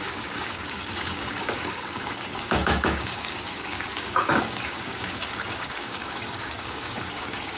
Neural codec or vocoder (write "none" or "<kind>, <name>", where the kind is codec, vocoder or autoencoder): codec, DAC